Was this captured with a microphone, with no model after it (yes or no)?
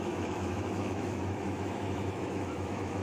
no